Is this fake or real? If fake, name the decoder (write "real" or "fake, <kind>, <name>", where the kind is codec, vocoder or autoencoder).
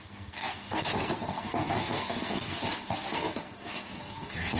fake, codec, SNAC